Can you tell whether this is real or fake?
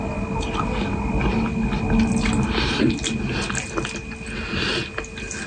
real